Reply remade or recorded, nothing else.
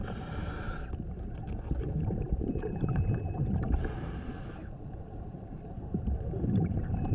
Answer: remade